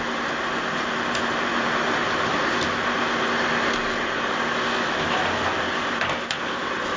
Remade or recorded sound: recorded